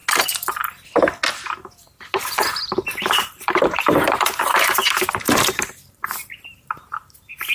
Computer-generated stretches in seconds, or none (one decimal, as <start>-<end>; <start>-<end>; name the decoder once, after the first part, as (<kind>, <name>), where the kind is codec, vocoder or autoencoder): 2.6-6.8 (vocoder, BigVGAN v2)